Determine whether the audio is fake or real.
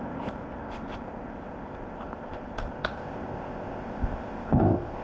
fake